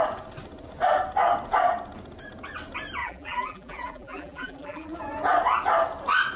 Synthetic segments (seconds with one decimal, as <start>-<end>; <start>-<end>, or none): 3.0-5.0